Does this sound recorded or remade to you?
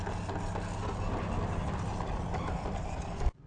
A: recorded